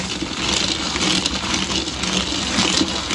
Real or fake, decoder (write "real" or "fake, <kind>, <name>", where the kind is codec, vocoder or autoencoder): real